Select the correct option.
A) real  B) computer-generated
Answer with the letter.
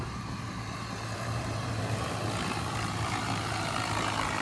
B